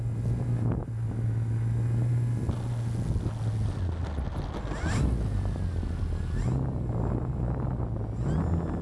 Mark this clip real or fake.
real